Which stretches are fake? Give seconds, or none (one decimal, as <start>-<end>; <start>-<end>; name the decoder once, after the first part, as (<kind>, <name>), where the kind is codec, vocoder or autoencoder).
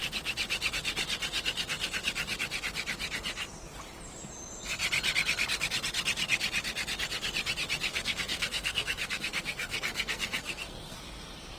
7.9-11.6 (codec, SNAC)